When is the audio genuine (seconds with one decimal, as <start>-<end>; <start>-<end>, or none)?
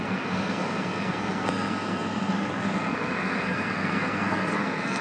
none